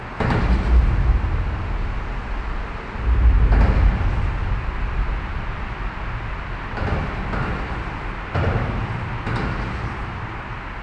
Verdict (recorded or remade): recorded